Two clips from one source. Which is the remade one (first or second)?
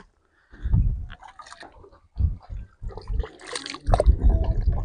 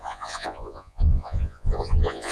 second